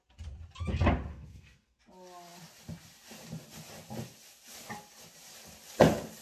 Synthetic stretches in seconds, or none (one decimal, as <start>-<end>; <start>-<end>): 1.1-1.8